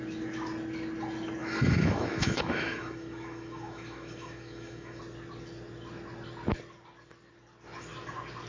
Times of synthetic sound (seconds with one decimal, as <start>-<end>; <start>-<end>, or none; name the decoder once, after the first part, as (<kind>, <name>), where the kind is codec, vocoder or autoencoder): 1.4-5.0 (autoencoder, DAC-VAE)